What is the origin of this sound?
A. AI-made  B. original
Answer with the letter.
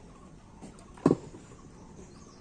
B